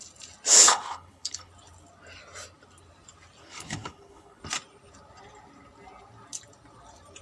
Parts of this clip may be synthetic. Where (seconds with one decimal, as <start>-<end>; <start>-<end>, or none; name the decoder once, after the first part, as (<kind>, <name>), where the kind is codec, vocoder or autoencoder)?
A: 0.5-1.5 (codec, HILCodec); 3.4-4.4